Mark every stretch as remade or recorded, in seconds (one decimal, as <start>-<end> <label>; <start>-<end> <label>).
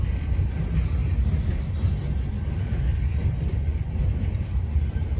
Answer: 0.0-3.5 recorded; 3.5-4.1 remade; 4.1-5.2 recorded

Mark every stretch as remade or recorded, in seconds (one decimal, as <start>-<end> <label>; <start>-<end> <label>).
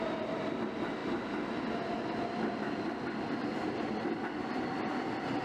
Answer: 0.0-5.4 recorded